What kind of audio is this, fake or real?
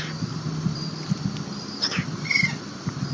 real